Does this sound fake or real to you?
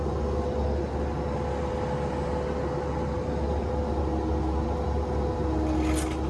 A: real